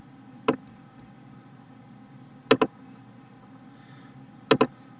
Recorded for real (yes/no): yes